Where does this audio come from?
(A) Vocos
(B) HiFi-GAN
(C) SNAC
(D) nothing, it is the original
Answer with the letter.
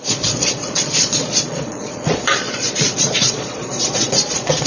A